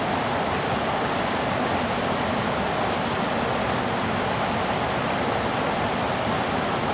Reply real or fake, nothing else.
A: real